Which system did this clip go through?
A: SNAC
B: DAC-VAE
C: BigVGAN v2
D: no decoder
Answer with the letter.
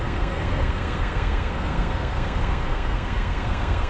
A